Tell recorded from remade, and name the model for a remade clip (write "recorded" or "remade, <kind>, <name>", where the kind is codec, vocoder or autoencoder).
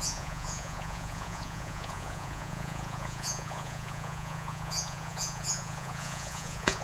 remade, vocoder, Vocos